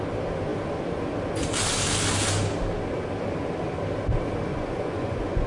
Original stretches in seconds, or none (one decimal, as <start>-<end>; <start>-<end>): 0.0-4.5